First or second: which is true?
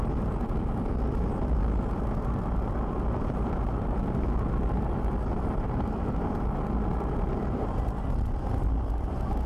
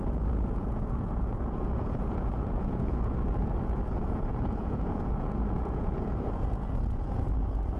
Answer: first